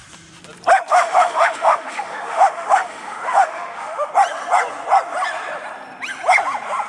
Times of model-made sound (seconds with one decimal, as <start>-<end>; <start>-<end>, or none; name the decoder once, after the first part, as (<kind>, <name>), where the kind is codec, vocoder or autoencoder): 0.9-4.1 (autoencoder, DAC-VAE)